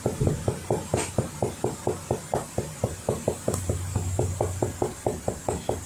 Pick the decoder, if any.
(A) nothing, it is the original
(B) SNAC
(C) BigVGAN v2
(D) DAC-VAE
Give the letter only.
A